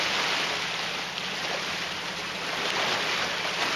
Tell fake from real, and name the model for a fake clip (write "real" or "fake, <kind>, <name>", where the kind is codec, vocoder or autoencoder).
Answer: real